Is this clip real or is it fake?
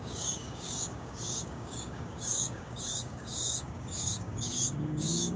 fake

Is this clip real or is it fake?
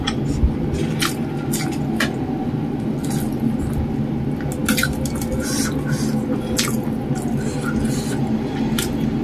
real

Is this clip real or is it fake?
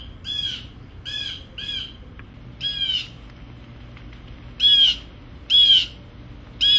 real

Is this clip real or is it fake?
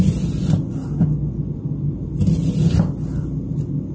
real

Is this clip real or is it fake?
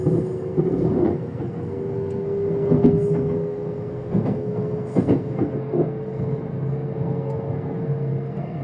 fake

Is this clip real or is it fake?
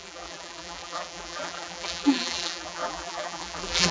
fake